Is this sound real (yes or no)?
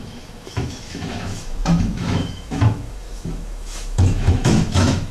no